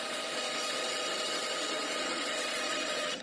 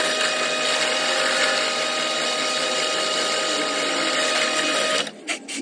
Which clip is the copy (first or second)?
first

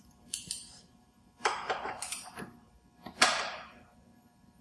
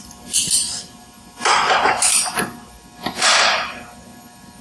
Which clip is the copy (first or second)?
first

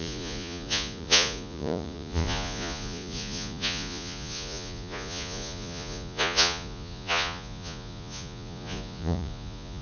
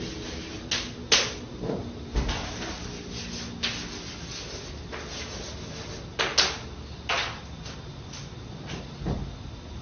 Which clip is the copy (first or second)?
first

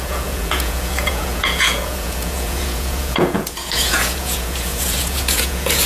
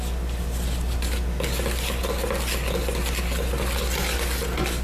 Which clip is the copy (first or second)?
first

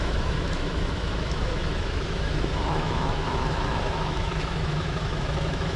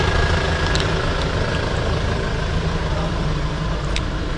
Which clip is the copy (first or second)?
first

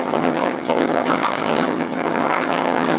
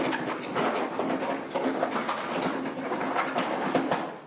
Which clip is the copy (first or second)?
first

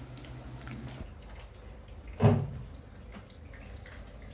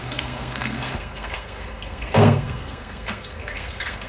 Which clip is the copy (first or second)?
second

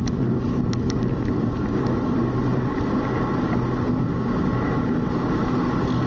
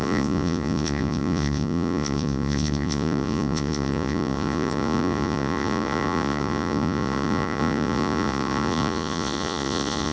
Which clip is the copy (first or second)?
second